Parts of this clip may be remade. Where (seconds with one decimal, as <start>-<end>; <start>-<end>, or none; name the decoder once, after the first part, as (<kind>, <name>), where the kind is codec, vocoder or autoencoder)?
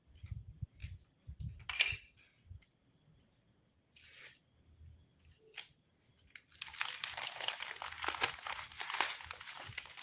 none